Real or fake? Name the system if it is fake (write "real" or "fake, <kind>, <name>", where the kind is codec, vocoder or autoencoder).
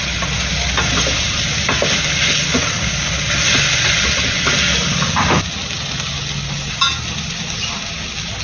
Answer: real